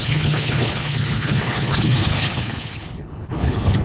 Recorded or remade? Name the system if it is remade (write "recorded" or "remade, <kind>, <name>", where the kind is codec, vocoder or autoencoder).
remade, codec, HILCodec